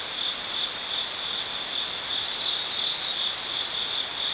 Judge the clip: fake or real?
real